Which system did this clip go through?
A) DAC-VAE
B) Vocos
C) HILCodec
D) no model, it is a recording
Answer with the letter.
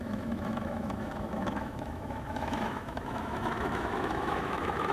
A